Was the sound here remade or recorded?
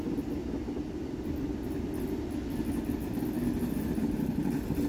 recorded